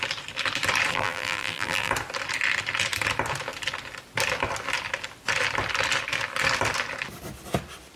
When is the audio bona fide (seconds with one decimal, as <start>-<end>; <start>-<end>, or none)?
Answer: 0.0-0.9; 1.9-8.0